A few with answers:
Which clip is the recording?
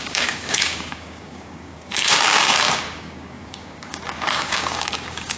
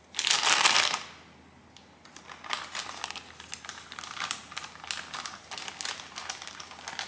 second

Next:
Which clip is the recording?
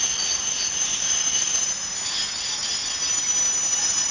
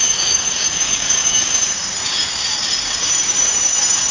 first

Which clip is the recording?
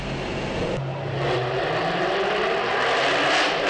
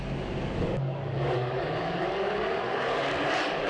first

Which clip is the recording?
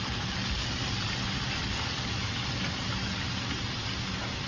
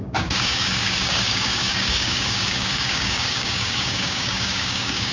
first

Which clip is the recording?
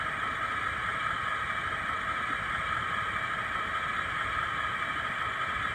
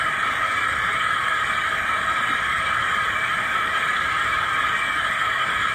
first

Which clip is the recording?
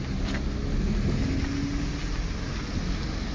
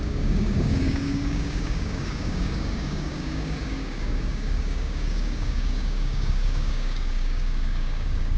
first